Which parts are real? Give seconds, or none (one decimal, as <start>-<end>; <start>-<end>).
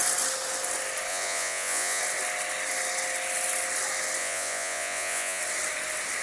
0.0-1.1; 2.0-4.2; 5.4-6.2